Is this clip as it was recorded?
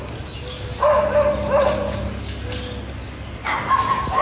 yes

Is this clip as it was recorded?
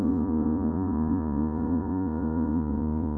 no